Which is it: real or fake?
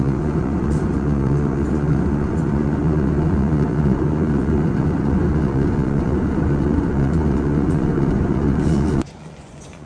fake